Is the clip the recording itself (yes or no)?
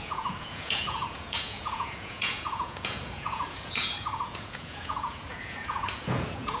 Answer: no